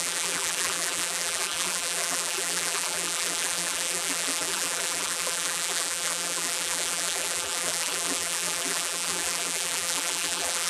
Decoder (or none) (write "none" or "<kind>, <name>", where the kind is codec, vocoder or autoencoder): vocoder, BigVGAN v2